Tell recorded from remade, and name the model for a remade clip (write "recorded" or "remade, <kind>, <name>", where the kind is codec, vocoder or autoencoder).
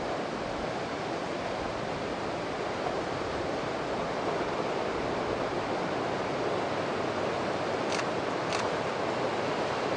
remade, vocoder, BigVGAN v2